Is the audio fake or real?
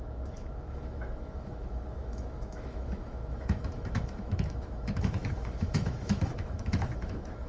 fake